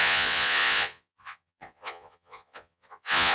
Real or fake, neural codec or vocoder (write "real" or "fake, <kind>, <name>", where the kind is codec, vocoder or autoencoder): fake, vocoder, Vocos